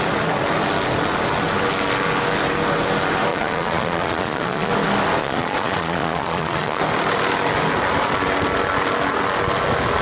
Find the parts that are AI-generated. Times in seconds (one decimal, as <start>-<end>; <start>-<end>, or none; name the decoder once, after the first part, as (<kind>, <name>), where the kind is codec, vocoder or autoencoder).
3.3-4.7 (vocoder, Vocos); 5.2-6.8